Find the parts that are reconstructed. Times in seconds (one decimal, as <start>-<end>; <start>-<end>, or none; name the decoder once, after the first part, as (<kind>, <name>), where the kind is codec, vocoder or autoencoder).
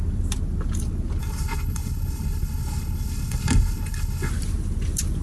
1.2-4.3 (codec, HILCodec)